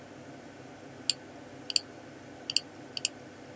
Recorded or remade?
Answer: recorded